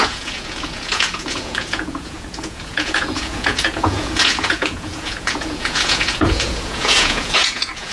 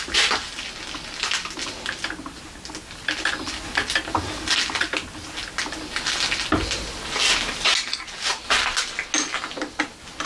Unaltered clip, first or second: second